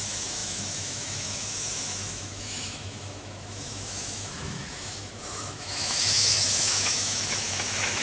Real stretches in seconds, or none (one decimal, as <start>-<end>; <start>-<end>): none